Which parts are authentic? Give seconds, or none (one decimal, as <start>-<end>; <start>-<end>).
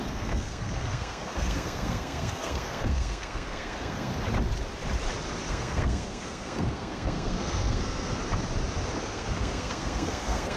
4.1-5.5; 8.2-9.0